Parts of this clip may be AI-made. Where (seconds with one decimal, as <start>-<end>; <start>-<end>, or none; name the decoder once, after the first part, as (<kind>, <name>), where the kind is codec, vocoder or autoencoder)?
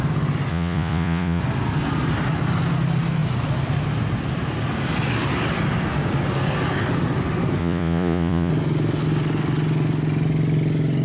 0.5-1.4 (vocoder, Vocos); 7.6-8.5